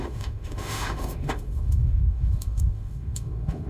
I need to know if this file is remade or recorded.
remade